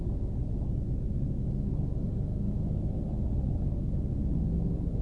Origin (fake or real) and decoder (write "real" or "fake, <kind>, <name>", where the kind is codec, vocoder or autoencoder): real